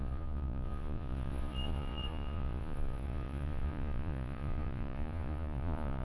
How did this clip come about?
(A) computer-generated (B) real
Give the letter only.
A